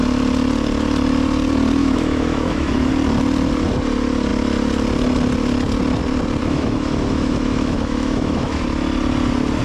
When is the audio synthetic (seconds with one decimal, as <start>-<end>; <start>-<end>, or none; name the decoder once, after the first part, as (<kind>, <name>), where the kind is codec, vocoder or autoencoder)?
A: 1.8-2.9 (autoencoder, DAC-VAE); 6.4-8.6